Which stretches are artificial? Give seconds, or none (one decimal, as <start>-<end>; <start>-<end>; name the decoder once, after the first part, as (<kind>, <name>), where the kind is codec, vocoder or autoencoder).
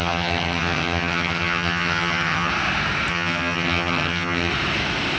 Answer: 0.0-2.5 (vocoder, HiFi-GAN); 3.1-4.5